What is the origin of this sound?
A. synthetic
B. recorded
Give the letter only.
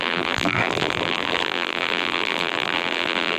A